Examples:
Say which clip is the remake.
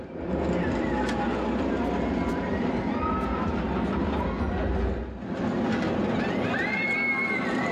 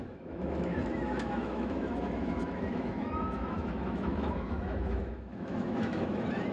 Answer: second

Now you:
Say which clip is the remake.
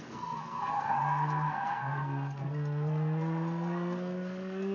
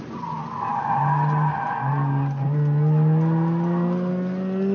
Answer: first